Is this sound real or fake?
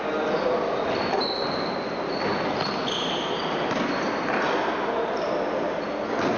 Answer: real